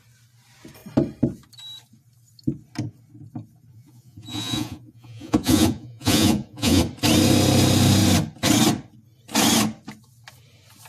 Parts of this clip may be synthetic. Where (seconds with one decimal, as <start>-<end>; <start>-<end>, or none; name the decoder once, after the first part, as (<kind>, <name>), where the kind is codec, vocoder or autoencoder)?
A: 3.7-6.8 (vocoder, Vocos)